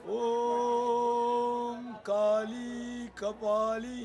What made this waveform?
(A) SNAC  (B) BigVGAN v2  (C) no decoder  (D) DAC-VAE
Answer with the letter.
C